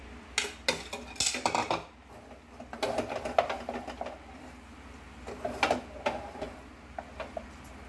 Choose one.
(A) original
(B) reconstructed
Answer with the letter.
A